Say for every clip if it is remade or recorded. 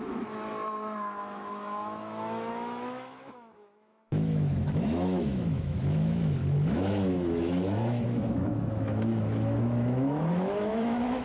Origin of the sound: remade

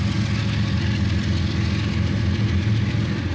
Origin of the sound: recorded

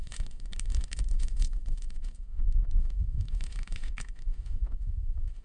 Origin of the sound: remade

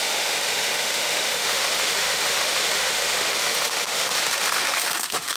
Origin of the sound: remade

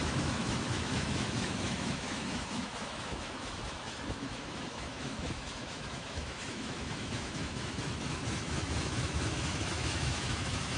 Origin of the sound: remade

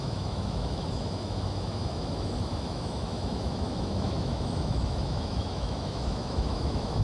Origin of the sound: remade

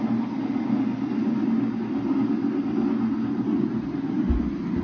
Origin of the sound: recorded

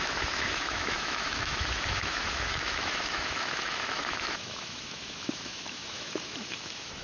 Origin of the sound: remade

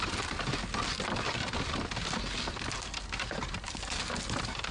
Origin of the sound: recorded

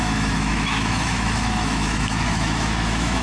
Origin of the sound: remade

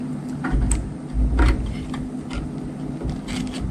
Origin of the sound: recorded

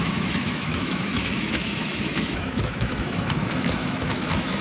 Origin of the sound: remade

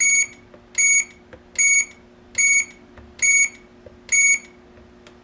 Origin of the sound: recorded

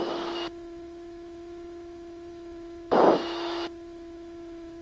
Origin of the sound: remade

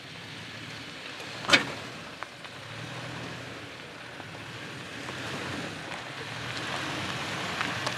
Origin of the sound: recorded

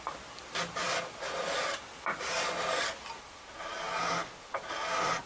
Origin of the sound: recorded